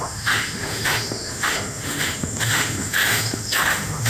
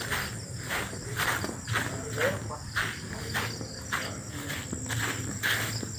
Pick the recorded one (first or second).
second